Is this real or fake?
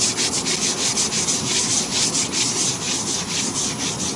real